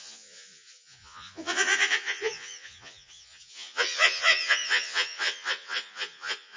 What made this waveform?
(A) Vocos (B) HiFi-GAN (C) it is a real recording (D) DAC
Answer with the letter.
A